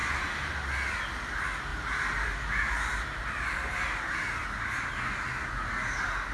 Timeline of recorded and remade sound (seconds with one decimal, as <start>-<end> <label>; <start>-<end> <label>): 0.0-0.5 remade; 0.5-1.7 recorded; 1.7-4.9 remade; 4.9-6.3 recorded